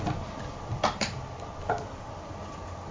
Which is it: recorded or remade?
recorded